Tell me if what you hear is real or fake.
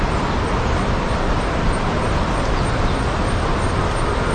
real